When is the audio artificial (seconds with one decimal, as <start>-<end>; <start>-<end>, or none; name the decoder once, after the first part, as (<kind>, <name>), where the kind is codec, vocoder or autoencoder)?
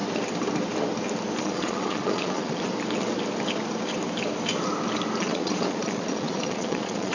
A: 1.4-2.7 (vocoder, Vocos); 5.2-7.1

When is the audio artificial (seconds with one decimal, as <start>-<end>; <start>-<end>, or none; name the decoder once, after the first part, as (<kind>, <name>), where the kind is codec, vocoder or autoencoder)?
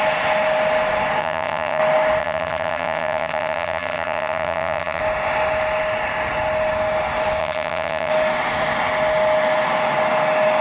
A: 1.2-1.8 (vocoder, HiFi-GAN); 2.2-5.0; 7.4-8.1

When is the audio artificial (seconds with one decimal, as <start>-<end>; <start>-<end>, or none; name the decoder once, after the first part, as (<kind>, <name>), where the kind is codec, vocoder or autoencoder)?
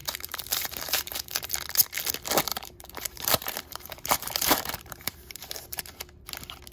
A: 0.0-1.5 (vocoder, BigVGAN v2); 2.5-5.8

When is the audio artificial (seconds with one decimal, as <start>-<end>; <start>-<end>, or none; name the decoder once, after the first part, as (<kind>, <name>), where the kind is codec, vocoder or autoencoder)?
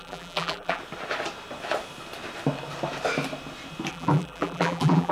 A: 0.0-0.8 (vocoder, BigVGAN v2); 3.9-5.1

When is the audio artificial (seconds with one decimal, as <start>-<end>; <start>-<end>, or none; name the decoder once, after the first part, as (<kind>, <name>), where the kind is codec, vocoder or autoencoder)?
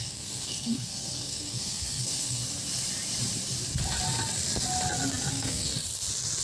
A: 0.0-2.4 (codec, SNAC); 5.3-5.7